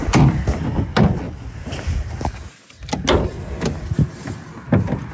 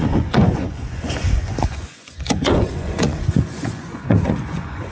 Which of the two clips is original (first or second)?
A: first